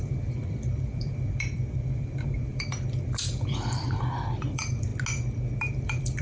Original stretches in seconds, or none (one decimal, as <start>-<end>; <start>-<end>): 4.9-5.6